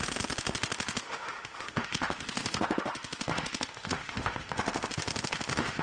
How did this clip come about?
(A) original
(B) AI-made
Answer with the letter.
B